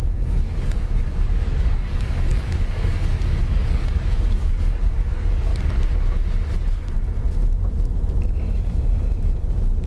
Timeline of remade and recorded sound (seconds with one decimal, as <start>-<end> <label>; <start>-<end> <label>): 0.0-5.5 remade; 5.5-9.9 recorded